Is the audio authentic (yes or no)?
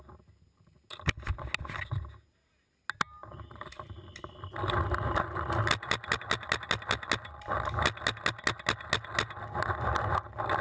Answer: yes